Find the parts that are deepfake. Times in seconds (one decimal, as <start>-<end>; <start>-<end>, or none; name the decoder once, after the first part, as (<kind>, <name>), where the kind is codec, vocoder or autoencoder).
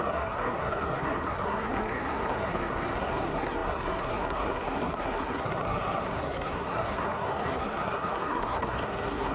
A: 0.0-9.3 (codec, SNAC)